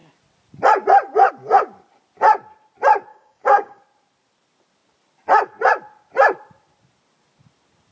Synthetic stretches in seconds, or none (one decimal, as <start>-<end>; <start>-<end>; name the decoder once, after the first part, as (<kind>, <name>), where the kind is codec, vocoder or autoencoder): 3.1-3.8 (codec, DAC)